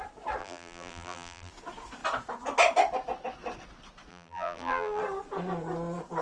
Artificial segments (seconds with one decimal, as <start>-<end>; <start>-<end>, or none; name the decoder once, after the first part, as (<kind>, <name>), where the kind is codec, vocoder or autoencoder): 0.4-1.5 (vocoder, BigVGAN v2); 4.1-5.0